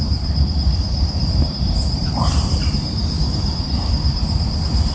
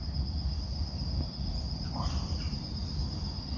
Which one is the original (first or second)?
second